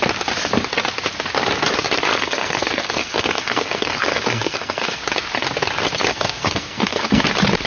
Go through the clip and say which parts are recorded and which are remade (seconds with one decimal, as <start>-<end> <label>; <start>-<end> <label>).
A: 0.0-2.1 recorded; 2.1-5.0 remade; 5.0-6.1 recorded; 6.1-7.3 remade; 7.3-7.7 recorded